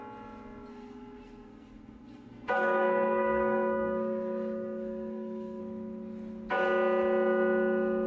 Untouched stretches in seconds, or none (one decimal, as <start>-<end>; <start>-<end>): 0.0-0.7; 5.6-8.1